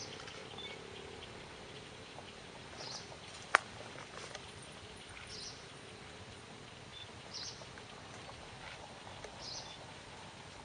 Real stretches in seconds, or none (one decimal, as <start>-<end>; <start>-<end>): 0.0-10.6